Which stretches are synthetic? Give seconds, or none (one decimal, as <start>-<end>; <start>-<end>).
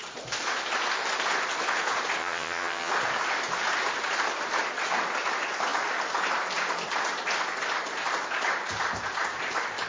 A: 2.2-2.9